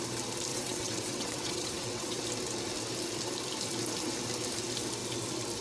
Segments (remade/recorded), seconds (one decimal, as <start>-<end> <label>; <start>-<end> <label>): 0.0-0.5 recorded; 0.5-2.2 remade; 2.2-5.6 recorded